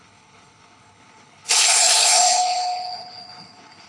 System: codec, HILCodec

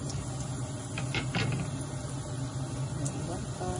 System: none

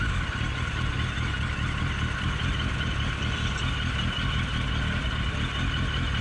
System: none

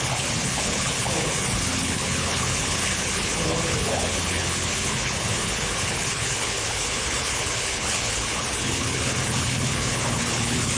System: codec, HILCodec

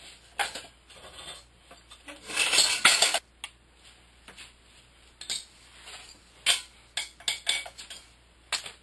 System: none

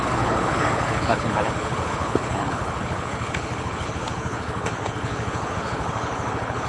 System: codec, HILCodec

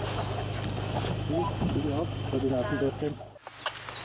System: none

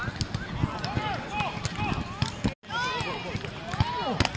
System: none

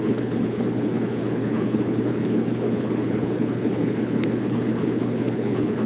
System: codec, HILCodec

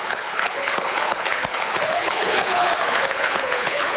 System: codec, HILCodec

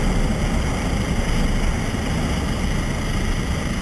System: none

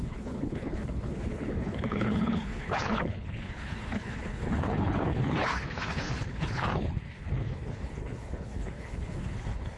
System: codec, HILCodec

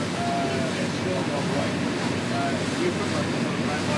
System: none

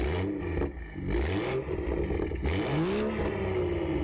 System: none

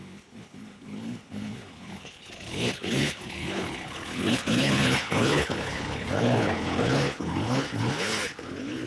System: codec, HILCodec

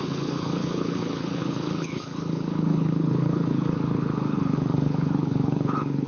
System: codec, HILCodec